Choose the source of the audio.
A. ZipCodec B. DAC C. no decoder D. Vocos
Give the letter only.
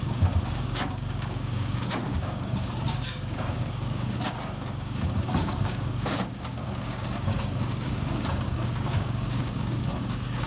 B